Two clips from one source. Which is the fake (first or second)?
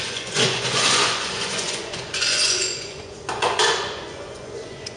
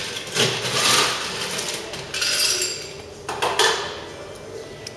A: first